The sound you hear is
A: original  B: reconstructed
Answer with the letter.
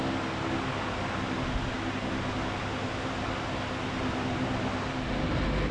A